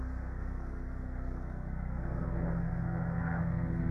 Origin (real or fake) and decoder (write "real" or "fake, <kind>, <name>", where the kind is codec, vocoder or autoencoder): fake, codec, SNAC